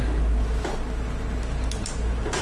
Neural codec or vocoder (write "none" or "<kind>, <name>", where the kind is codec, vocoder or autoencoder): none